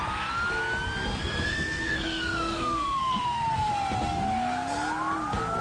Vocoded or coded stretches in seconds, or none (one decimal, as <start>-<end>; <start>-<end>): 1.2-3.7